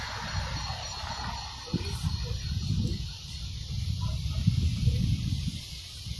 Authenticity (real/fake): real